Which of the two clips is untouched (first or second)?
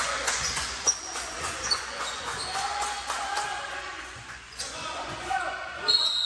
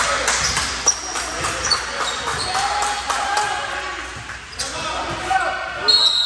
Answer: second